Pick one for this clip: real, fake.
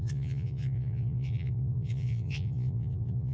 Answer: fake